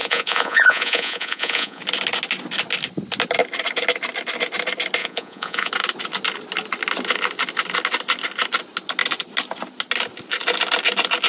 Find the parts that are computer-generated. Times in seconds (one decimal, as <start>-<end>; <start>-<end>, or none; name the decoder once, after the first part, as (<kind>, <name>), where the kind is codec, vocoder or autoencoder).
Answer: 0.0-1.8 (vocoder, Vocos); 5.0-5.7